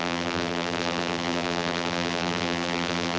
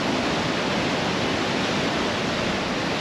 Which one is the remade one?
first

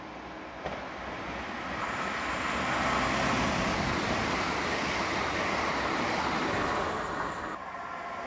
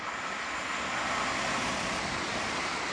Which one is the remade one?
second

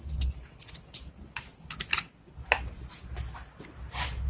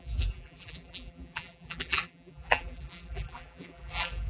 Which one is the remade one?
second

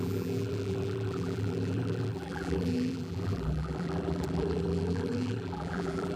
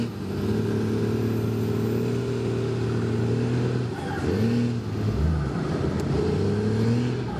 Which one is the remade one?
first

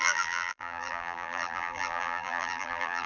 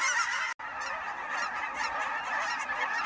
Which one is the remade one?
first